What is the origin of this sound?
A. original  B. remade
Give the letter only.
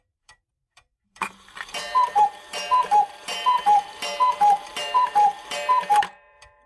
B